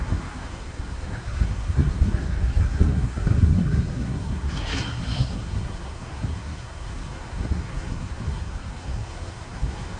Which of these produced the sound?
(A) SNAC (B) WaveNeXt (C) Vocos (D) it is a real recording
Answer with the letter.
A